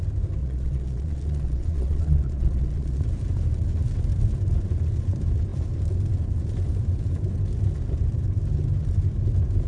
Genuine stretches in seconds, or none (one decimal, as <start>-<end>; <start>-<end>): 0.0-0.4; 3.0-9.7

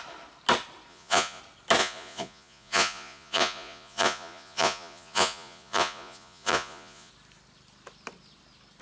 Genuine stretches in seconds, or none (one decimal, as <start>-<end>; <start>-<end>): 0.0-0.9; 1.4-1.8; 7.1-8.8